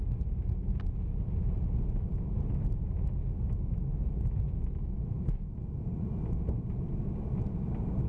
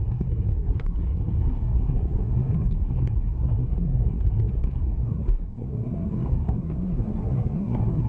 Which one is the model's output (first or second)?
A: second